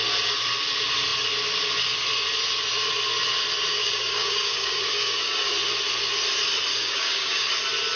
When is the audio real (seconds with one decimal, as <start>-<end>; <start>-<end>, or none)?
0.0-3.7; 5.5-6.7; 7.5-8.0